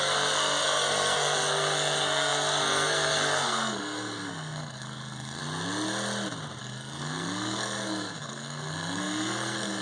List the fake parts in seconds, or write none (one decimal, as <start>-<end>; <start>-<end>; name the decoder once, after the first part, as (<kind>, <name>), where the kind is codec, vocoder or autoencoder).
0.0-5.4 (codec, SNAC); 6.6-9.8